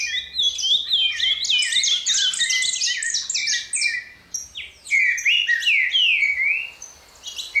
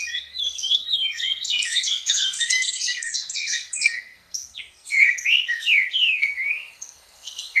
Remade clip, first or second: second